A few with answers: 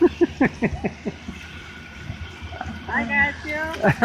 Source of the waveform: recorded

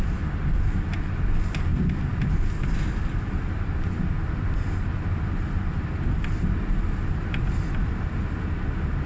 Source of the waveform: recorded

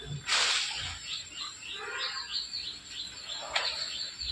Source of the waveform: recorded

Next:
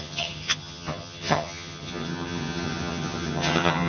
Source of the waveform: remade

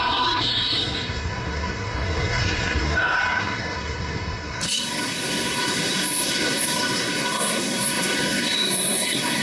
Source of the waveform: remade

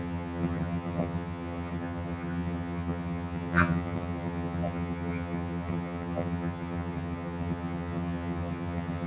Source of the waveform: remade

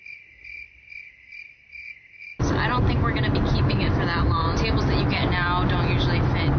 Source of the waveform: recorded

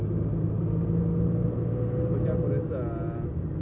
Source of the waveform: recorded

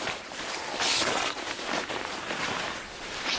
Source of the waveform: recorded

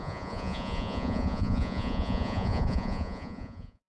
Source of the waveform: remade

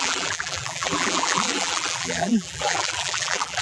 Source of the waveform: remade